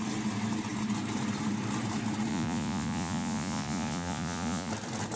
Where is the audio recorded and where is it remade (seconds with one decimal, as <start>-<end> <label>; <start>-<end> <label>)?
0.0-2.3 recorded; 2.3-4.7 remade; 4.7-5.2 recorded